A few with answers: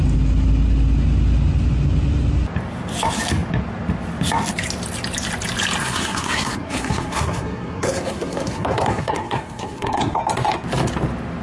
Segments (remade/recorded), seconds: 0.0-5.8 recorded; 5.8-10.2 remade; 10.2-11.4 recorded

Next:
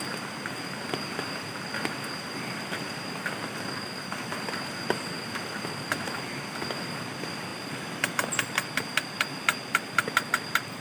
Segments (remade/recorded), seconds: 0.0-10.8 recorded

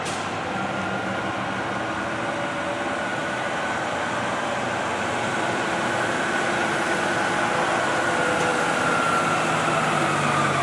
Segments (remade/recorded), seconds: 0.0-3.2 recorded; 3.2-6.4 remade; 6.4-10.6 recorded

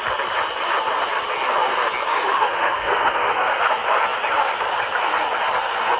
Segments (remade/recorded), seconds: 0.0-2.1 recorded; 2.1-3.6 remade; 3.6-6.0 recorded

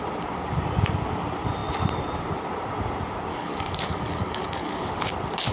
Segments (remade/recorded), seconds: 0.0-3.3 recorded; 3.3-4.9 remade; 4.9-5.5 recorded